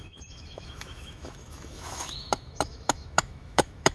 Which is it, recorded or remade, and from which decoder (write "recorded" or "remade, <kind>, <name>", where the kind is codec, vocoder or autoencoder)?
remade, autoencoder, DAC-VAE